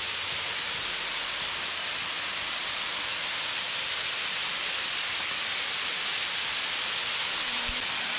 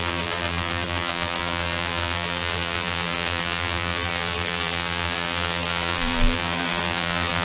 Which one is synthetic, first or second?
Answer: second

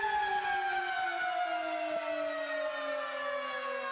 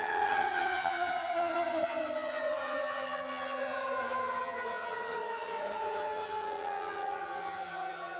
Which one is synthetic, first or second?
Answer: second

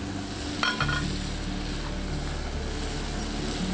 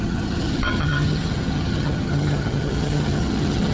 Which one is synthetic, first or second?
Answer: second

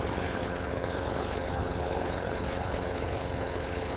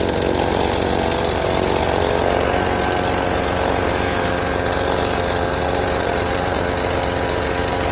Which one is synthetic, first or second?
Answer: first